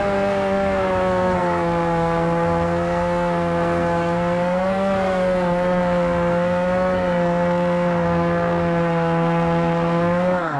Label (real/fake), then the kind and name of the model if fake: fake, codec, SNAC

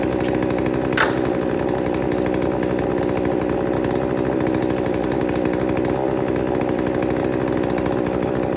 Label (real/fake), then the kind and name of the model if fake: real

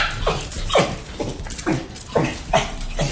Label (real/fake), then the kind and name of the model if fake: real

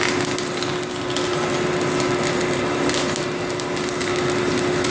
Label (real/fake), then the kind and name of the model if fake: real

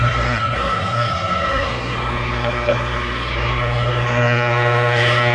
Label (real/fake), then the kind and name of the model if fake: fake, codec, SNAC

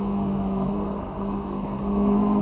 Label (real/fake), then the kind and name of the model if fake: fake, codec, SNAC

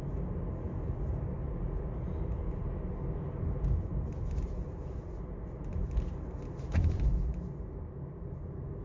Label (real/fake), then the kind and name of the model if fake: real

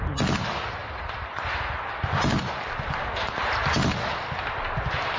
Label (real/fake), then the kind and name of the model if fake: real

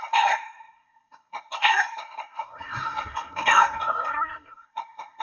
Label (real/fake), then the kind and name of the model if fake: fake, codec, SNAC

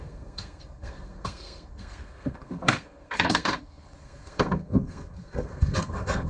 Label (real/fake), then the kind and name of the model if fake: fake, codec, SNAC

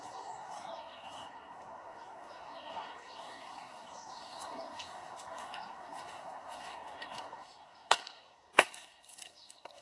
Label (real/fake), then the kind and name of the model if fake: fake, codec, SNAC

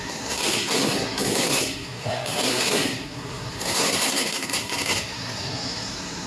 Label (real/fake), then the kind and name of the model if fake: fake, codec, SNAC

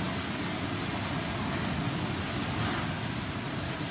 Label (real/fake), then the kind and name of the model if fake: real